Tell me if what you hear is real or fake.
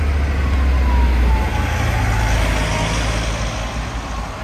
real